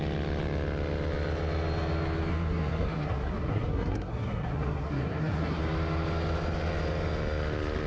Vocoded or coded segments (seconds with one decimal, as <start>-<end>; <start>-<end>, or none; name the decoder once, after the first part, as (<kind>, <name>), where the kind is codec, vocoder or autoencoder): 2.3-5.6 (codec, SNAC)